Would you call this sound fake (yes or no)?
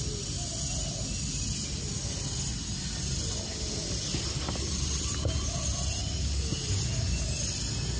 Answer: no